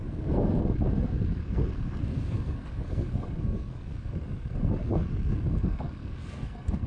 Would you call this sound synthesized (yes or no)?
yes